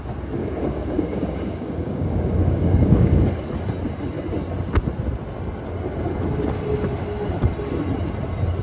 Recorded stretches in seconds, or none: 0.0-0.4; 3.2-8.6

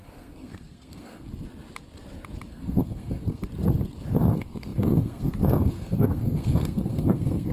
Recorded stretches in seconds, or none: 1.3-2.5; 3.4-4.1

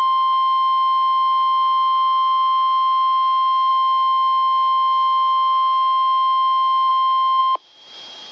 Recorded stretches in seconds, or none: 0.0-8.3

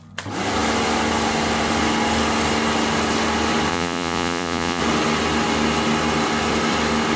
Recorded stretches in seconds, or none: 0.0-3.7; 4.8-7.2

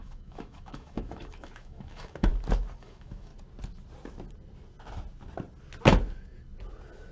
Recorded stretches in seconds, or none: 2.3-2.8; 3.3-7.1